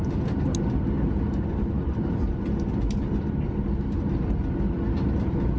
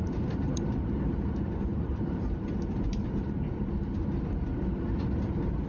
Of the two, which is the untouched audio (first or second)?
first